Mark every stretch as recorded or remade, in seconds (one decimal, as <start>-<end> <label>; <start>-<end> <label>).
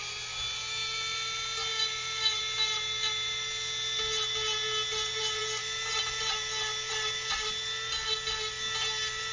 0.0-1.7 recorded; 1.7-2.4 remade; 2.4-9.3 recorded